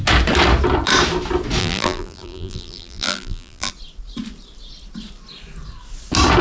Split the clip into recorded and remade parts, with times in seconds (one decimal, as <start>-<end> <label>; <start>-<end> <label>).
0.0-1.6 recorded; 1.6-3.7 remade; 3.7-6.4 recorded

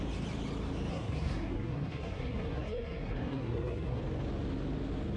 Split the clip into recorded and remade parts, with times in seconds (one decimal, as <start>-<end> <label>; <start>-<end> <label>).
0.0-0.9 recorded; 0.9-4.0 remade; 4.0-5.2 recorded

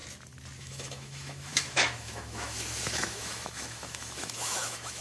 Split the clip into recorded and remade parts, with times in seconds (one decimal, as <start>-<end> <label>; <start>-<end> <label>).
0.0-0.6 recorded; 0.6-5.0 remade

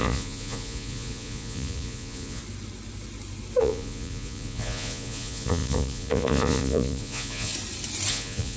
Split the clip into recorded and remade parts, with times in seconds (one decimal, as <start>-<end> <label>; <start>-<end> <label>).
0.0-2.4 remade; 2.4-3.6 recorded; 3.6-7.5 remade; 7.5-8.1 recorded; 8.1-8.6 remade

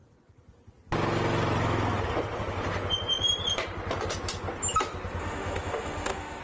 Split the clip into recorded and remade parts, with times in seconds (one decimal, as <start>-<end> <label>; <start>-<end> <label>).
0.0-5.2 recorded; 5.2-6.4 remade

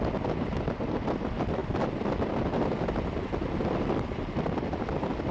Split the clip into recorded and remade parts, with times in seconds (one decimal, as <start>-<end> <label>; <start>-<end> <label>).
0.0-5.3 recorded